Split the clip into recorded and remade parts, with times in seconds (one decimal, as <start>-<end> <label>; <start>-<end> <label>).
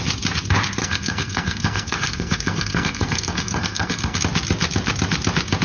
0.0-0.8 recorded; 0.8-4.2 remade; 4.2-5.6 recorded